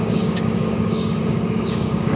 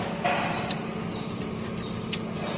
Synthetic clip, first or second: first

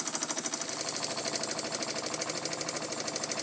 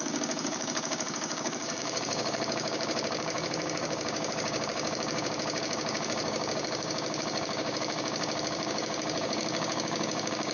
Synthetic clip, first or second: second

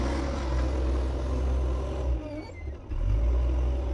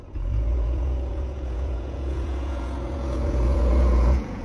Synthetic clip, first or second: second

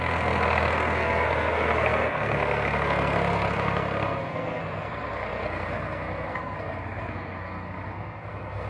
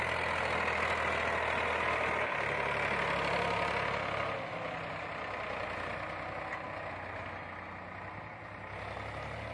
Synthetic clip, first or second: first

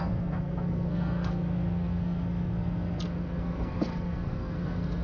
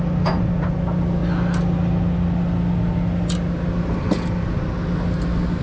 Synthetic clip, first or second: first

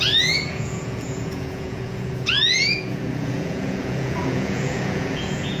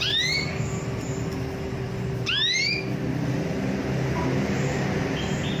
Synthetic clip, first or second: first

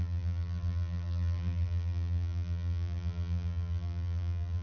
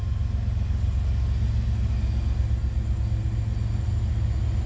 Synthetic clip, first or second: first